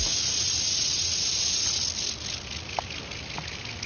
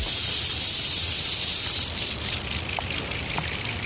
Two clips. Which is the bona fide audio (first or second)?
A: first